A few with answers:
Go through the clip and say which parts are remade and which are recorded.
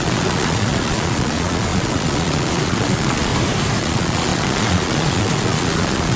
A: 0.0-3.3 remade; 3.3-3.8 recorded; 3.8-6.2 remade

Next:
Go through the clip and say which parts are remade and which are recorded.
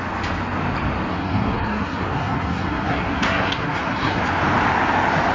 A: 0.0-1.1 recorded; 1.1-4.2 remade; 4.2-5.3 recorded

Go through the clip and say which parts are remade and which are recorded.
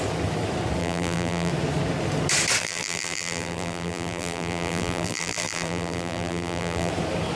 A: 0.0-0.8 recorded; 0.8-1.5 remade; 1.5-2.6 recorded; 2.6-6.9 remade; 6.9-7.4 recorded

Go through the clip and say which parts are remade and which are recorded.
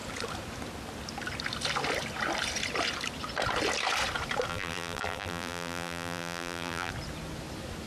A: 0.0-4.5 recorded; 4.5-6.9 remade; 6.9-7.9 recorded